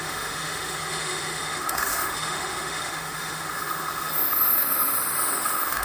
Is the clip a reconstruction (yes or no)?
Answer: yes